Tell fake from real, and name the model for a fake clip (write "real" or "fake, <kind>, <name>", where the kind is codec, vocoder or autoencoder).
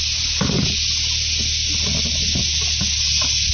real